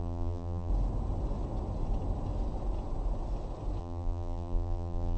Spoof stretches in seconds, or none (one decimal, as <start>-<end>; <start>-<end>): 0.0-0.7; 3.8-5.2